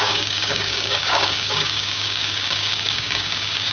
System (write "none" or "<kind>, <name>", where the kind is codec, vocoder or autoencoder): codec, DAC